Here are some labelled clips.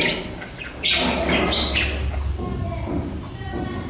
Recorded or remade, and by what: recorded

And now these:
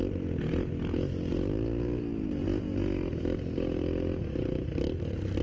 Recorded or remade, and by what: recorded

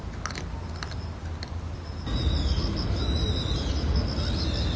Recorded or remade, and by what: recorded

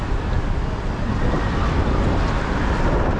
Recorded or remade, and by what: recorded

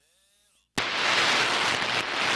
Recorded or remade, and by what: recorded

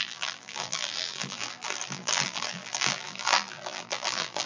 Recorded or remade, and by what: remade, vocoder, BigVGAN v2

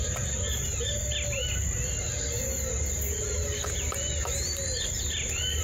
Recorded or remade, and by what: recorded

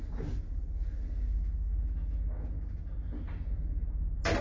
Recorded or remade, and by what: recorded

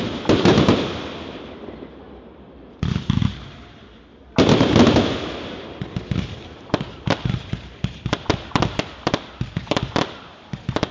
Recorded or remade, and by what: remade, vocoder, BigVGAN v2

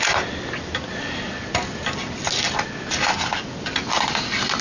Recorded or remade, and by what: recorded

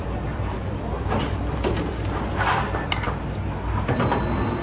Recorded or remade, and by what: remade, vocoder, BigVGAN v2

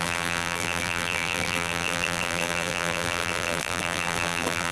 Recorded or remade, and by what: remade, vocoder, BigVGAN v2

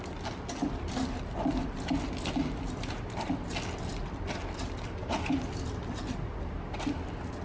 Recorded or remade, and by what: recorded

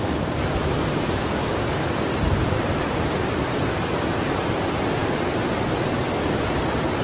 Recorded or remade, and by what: recorded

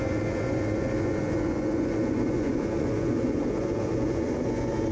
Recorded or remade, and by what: remade, vocoder, Vocos